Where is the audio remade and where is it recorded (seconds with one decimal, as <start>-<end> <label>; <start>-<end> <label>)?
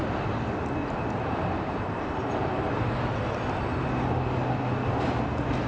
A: 0.0-0.8 recorded; 0.8-3.2 remade; 3.2-5.7 recorded